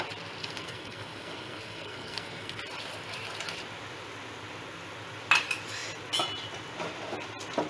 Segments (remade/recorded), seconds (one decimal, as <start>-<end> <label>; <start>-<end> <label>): 0.0-0.4 recorded; 0.4-2.6 remade; 2.6-7.7 recorded